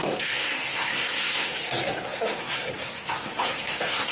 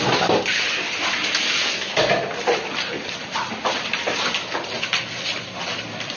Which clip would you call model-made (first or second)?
first